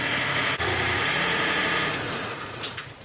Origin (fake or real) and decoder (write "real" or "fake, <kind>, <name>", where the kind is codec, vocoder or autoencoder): fake, vocoder, Vocos